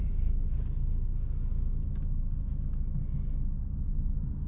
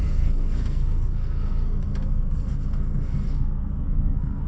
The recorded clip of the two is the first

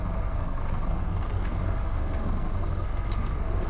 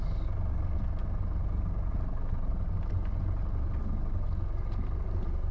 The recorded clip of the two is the second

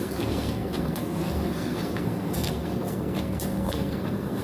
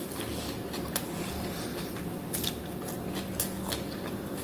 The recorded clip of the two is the second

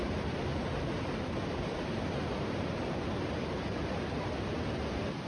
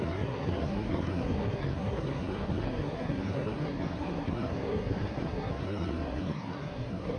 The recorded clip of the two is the first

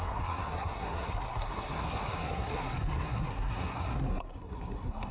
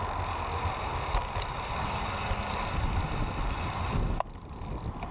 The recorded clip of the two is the second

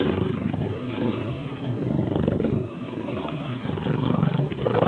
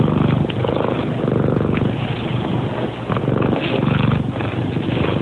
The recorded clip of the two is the second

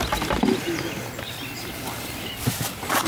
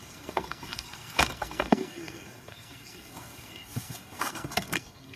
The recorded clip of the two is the first